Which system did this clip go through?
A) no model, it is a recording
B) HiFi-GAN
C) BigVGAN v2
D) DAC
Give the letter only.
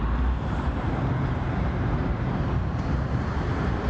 C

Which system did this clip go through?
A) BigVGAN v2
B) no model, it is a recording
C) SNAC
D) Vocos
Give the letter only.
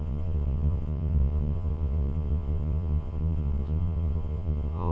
D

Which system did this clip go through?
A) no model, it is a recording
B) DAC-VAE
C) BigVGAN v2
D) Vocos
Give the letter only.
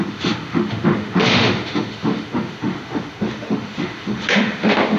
B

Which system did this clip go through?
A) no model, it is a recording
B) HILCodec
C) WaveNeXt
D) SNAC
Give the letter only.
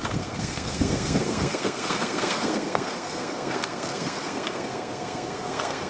D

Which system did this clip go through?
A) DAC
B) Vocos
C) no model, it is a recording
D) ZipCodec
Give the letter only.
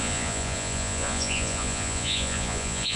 B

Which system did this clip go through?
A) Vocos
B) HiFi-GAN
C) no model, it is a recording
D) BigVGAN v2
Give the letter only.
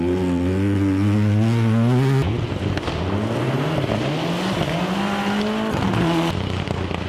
C